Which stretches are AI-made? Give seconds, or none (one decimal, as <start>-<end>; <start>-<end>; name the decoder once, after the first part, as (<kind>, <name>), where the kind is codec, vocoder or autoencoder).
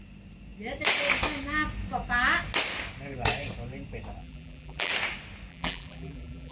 4.2-4.9 (vocoder, BigVGAN v2); 5.5-6.5